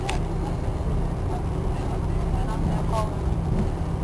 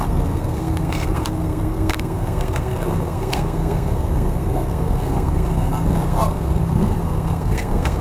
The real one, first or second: first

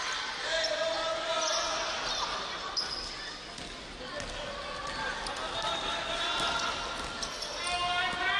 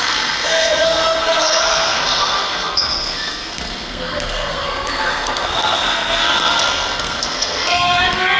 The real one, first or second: first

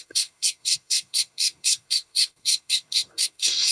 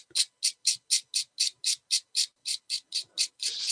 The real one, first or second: second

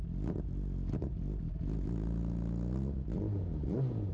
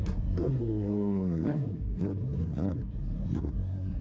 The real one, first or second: first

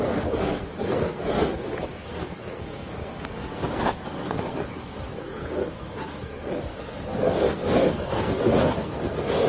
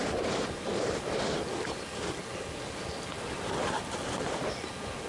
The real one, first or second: second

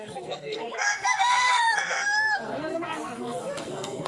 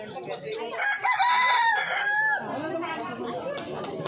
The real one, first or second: second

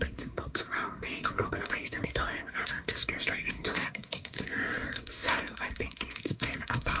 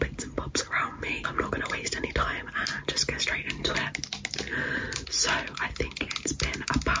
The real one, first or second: second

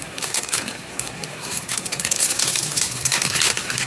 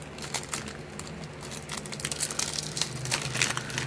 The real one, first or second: second